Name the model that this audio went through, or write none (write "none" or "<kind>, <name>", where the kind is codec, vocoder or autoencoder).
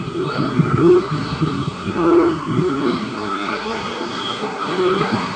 codec, SNAC